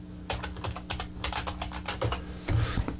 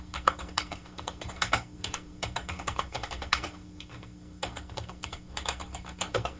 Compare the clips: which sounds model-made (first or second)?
second